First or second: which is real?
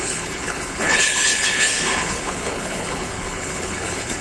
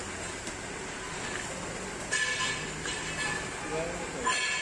second